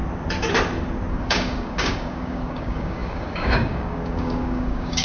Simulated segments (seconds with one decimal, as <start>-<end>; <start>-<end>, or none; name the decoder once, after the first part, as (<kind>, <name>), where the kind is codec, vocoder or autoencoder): 1.1-5.0 (codec, DAC)